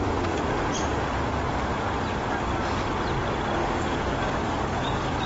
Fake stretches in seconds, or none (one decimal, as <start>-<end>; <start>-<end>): 3.6-5.3